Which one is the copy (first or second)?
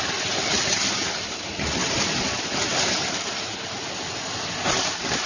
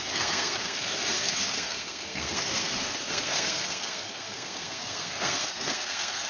second